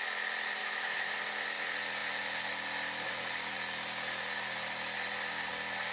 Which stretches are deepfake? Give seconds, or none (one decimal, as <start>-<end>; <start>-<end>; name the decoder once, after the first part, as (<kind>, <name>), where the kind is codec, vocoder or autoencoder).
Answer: 0.6-1.2 (autoencoder, DAC-VAE)